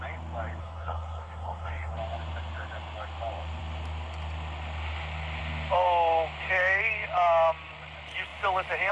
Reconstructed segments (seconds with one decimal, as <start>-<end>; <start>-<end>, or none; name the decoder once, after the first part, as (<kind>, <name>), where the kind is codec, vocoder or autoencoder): 0.6-1.9 (codec, SNAC)